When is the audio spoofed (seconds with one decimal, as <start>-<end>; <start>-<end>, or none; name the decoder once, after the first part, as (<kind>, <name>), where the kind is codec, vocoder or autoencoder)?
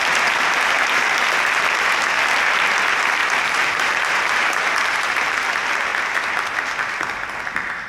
3.2-5.5 (vocoder, BigVGAN v2)